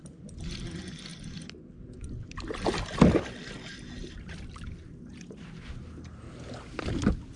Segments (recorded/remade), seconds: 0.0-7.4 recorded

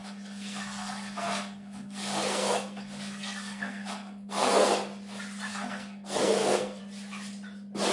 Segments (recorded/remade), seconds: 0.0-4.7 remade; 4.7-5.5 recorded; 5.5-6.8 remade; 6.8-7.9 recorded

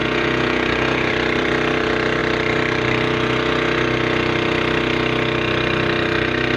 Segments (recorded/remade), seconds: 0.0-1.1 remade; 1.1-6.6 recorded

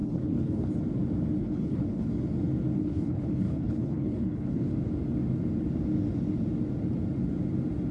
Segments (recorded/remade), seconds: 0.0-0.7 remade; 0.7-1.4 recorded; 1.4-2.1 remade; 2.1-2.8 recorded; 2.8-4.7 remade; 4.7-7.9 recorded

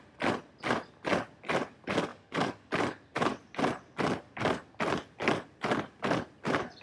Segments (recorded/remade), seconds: 0.0-2.1 recorded; 2.1-2.7 remade; 2.7-6.8 recorded

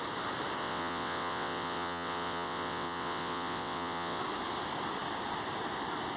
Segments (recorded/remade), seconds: 0.0-0.6 recorded; 0.6-4.2 remade; 4.2-6.2 recorded

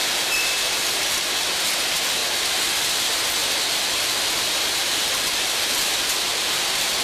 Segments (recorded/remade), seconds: 0.0-1.6 remade; 1.6-3.4 recorded; 3.4-6.0 remade; 6.0-7.0 recorded